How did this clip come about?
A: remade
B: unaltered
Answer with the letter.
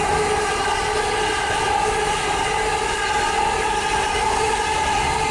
B